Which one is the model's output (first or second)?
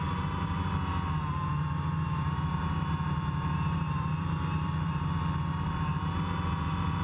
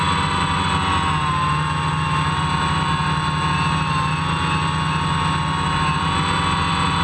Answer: first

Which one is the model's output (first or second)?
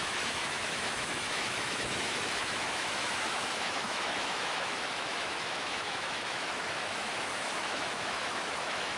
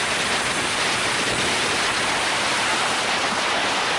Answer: first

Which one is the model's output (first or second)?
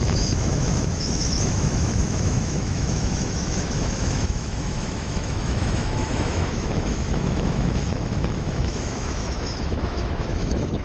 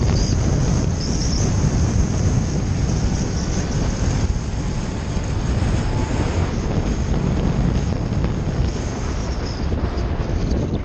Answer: first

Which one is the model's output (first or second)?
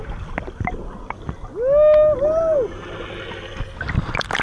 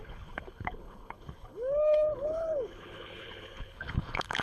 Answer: second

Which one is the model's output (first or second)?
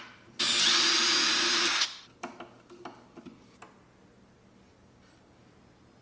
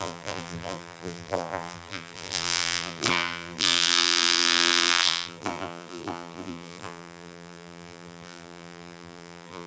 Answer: second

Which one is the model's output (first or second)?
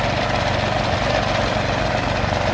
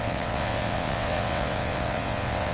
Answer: second